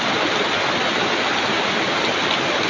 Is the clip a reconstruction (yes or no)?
no